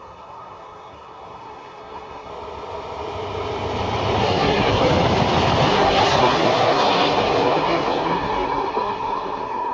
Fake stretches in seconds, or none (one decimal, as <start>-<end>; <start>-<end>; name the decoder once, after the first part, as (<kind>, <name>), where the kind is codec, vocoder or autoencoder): 0.0-2.3 (codec, SNAC); 4.2-4.8; 5.7-9.7